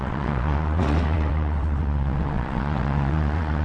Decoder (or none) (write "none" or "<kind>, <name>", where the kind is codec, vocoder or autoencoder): vocoder, WaveNeXt